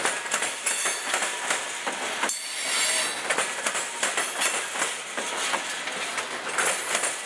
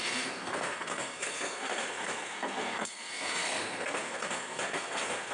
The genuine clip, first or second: first